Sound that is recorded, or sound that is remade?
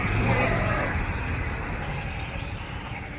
recorded